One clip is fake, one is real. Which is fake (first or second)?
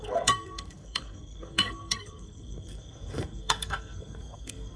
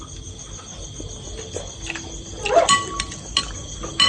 first